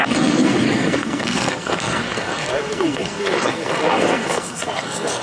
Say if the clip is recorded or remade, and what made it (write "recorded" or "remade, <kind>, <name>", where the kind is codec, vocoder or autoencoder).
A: remade, codec, SNAC